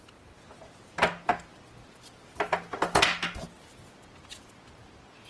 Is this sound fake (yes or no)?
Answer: no